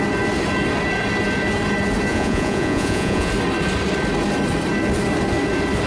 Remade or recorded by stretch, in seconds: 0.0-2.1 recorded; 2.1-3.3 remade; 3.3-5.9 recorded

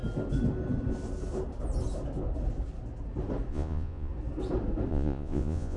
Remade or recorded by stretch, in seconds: 0.0-3.5 recorded; 3.5-4.1 remade; 4.1-4.9 recorded; 4.9-5.8 remade

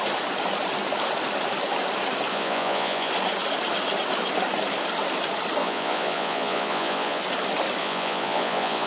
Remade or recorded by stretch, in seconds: 0.0-2.3 recorded; 2.3-3.1 remade; 3.1-5.6 recorded; 5.6-7.2 remade; 7.2-7.8 recorded; 7.8-8.9 remade

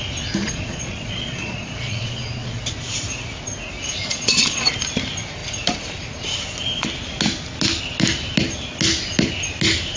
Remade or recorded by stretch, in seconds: 0.0-0.4 recorded; 0.4-2.6 remade; 2.6-4.0 recorded; 4.0-4.7 remade; 4.7-10.0 recorded

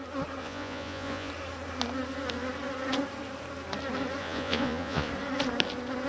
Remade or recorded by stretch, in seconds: 0.0-0.4 recorded; 0.4-1.3 remade; 1.3-4.2 recorded; 4.2-5.1 remade; 5.1-6.1 recorded

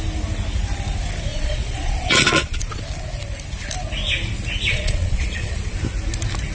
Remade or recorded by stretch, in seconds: 0.0-1.3 recorded; 1.3-2.8 remade; 2.8-4.7 recorded; 4.7-5.6 remade; 5.6-6.5 recorded

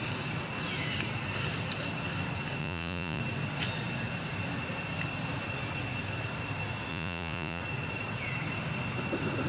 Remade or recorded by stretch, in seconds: 0.0-2.6 recorded; 2.6-3.2 remade; 3.2-6.9 recorded; 6.9-7.6 remade; 7.6-9.5 recorded